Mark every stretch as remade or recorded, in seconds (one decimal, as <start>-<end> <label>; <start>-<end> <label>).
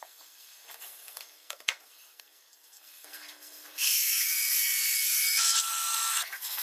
0.0-6.6 remade